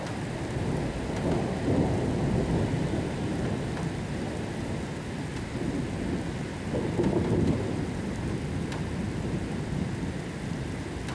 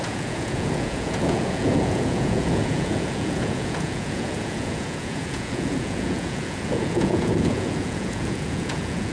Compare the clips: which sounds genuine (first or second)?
first